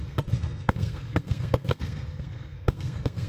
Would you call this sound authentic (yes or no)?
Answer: no